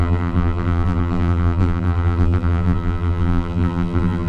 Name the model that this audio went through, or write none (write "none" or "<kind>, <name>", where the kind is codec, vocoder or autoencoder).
vocoder, BigVGAN v2